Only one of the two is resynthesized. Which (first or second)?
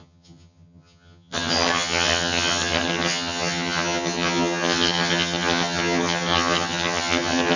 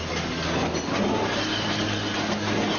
first